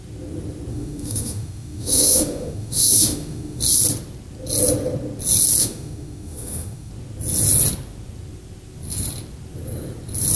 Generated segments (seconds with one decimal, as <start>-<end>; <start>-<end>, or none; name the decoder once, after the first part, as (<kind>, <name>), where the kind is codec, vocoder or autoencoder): 0.7-3.6 (autoencoder, DAC-VAE); 5.6-6.9